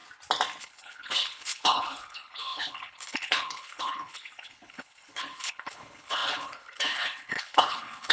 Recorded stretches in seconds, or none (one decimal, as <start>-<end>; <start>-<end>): 0.0-0.6